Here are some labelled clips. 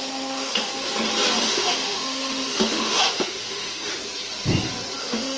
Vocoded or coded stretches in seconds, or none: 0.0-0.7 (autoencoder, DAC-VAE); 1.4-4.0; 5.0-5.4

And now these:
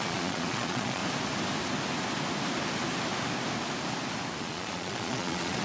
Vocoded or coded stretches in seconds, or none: 0.0-1.0 (vocoder, Vocos); 4.4-5.6

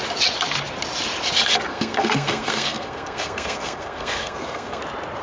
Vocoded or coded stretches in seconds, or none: 1.7-4.8 (codec, SNAC)

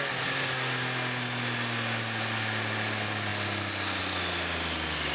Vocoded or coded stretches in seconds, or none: none

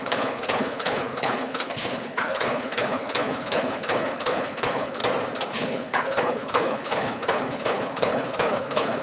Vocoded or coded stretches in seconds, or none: 0.0-5.0 (codec, HILCodec); 5.5-9.0

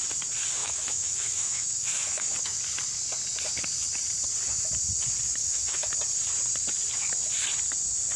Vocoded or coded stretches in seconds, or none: 0.6-2.6 (autoencoder, DAC-VAE); 5.4-5.9